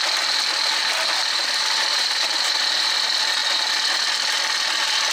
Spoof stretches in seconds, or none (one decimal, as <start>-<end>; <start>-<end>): 0.8-2.5